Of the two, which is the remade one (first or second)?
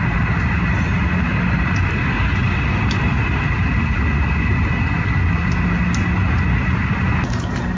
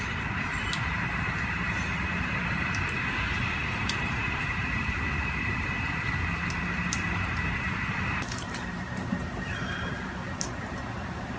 second